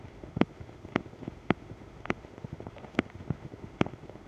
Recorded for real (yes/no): no